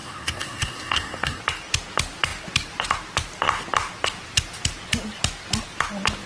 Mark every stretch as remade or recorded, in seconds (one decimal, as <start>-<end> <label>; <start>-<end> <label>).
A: 0.0-1.4 remade; 1.4-6.3 recorded